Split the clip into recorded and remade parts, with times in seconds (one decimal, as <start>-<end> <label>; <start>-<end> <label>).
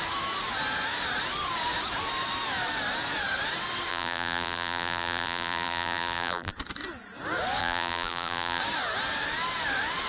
0.0-3.9 recorded; 3.9-6.5 remade; 6.5-7.6 recorded; 7.6-8.6 remade; 8.6-10.1 recorded